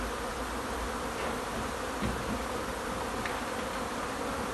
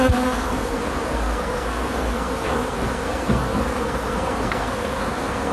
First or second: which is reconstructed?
second